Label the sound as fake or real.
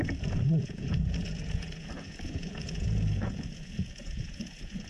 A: fake